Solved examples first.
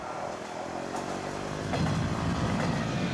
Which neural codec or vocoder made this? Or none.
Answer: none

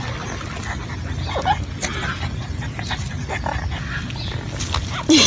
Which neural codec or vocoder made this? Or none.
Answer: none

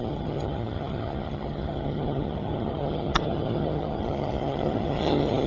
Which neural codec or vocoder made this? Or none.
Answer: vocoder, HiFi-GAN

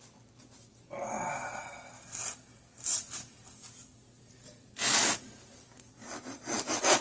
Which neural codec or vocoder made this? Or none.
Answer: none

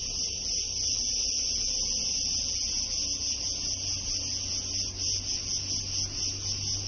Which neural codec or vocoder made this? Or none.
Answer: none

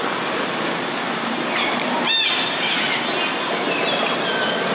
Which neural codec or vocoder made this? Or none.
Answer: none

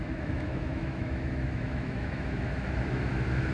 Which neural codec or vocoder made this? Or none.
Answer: autoencoder, DAC-VAE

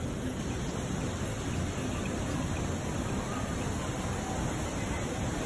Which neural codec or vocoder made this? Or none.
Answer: none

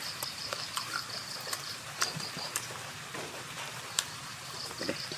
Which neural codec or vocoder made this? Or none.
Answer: vocoder, BigVGAN v2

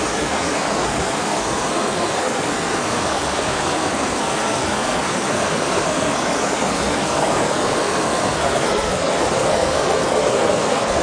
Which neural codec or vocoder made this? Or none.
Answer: codec, SNAC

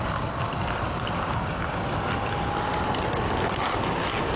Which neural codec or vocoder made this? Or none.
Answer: none